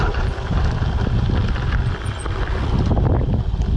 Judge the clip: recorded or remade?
recorded